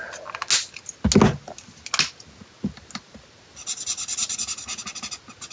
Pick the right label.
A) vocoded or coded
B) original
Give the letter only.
B